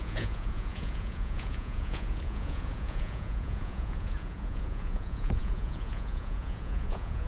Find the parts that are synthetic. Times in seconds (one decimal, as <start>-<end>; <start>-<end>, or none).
0.0-7.3